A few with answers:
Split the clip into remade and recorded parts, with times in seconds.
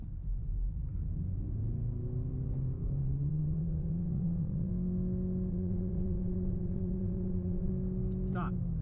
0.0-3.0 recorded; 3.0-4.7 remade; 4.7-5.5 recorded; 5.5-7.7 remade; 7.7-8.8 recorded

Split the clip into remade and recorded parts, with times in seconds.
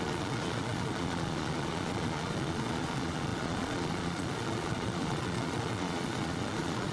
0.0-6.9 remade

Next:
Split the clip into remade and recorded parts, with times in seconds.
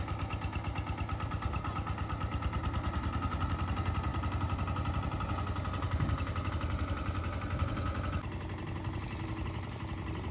0.0-10.3 recorded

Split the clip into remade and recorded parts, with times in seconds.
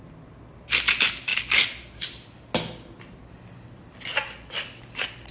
0.0-5.3 recorded